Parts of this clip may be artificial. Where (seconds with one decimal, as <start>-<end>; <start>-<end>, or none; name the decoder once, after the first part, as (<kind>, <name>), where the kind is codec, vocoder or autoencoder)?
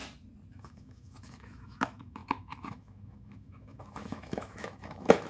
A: 0.5-5.3 (autoencoder, DAC-VAE)